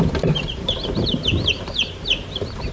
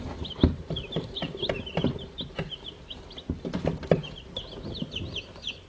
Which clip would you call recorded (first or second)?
second